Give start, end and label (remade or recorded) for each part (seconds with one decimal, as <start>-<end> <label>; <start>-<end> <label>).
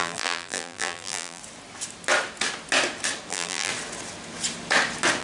0.0-1.4 remade; 1.4-3.3 recorded; 3.3-3.7 remade; 3.7-5.2 recorded